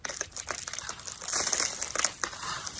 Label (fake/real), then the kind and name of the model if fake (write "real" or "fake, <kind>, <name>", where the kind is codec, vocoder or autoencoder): real